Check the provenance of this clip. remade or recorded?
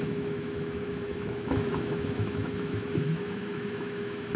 remade